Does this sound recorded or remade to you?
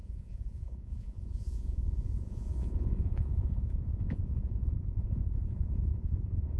remade